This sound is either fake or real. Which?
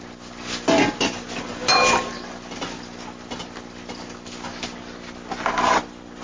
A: real